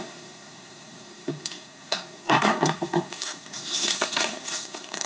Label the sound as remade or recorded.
remade